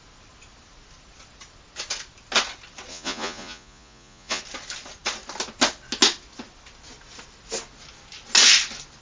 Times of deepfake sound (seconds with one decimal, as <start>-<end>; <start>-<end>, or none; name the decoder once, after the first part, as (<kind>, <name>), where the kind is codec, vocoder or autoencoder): 2.9-4.4 (vocoder, Vocos)

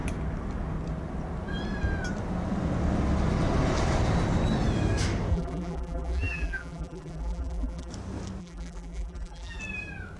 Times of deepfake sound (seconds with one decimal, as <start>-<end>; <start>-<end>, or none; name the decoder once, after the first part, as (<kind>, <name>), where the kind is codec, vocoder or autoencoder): 5.3-7.9 (vocoder, BigVGAN v2); 8.4-9.6